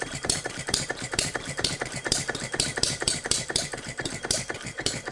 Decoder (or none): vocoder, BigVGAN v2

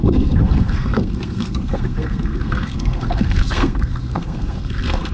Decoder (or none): codec, SNAC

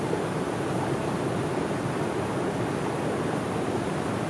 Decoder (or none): none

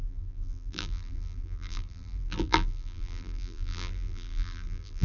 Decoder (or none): vocoder, BigVGAN v2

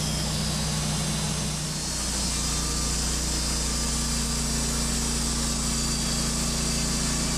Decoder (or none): none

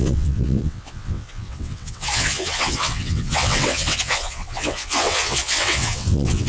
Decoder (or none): vocoder, WaveNeXt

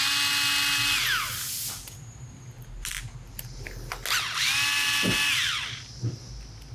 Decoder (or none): none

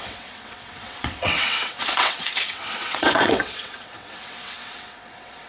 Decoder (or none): vocoder, WaveNeXt